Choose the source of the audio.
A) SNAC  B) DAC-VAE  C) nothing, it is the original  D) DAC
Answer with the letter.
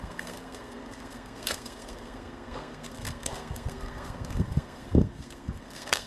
A